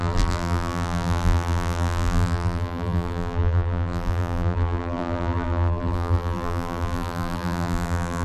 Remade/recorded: remade